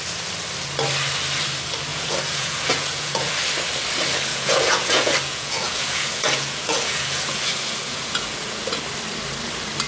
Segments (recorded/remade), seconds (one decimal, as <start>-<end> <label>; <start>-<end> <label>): 0.0-1.9 recorded; 1.9-3.3 remade; 3.3-4.3 recorded; 4.3-8.8 remade; 8.8-9.9 recorded